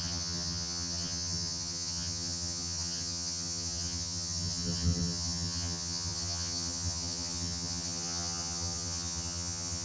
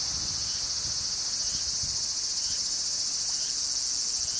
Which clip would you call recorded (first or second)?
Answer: second